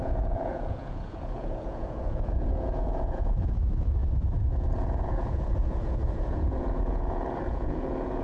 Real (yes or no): no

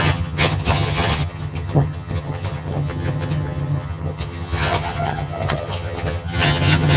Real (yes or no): no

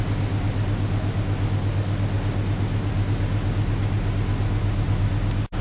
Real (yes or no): yes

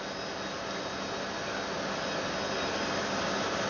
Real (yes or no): yes